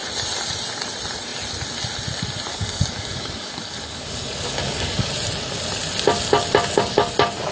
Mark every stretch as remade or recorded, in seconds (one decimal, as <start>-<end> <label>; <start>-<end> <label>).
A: 0.0-2.5 recorded; 2.5-5.1 remade; 5.1-7.5 recorded